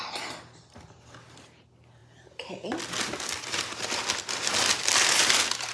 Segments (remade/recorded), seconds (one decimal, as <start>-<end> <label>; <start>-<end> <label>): 0.0-5.7 recorded